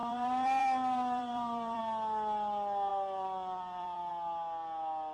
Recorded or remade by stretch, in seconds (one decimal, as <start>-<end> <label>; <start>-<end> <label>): 0.0-1.8 remade; 1.8-2.9 recorded; 2.9-4.1 remade; 4.1-5.1 recorded